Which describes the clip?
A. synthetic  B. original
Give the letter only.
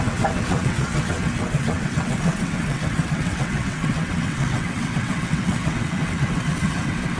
A